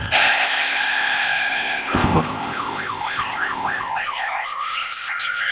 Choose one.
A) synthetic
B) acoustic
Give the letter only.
A